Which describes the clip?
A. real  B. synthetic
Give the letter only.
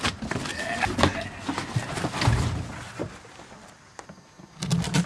A